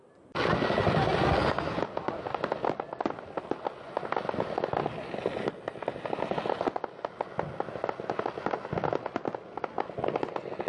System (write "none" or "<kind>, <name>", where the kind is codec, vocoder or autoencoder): none